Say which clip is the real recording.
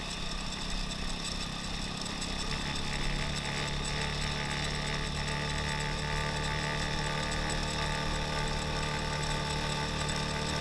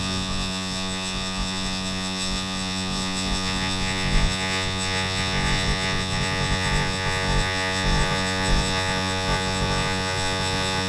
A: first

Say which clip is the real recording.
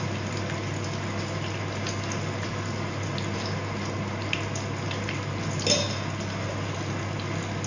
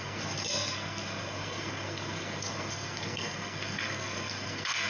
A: first